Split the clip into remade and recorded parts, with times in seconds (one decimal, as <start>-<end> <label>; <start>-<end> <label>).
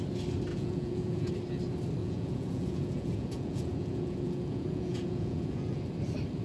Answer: 0.0-0.5 recorded; 0.5-1.3 remade; 1.3-2.0 recorded; 2.0-5.8 remade; 5.8-6.4 recorded